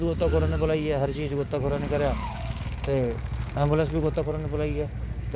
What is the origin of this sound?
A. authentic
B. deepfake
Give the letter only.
B